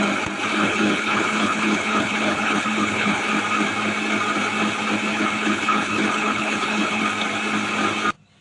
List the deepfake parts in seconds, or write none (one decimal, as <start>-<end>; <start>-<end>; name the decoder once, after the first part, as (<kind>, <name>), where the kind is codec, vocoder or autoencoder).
0.5-3.3 (codec, HILCodec); 5.1-7.0